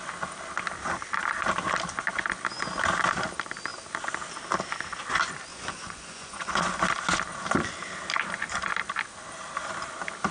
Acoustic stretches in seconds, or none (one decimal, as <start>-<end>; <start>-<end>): 0.0-5.5; 6.8-10.3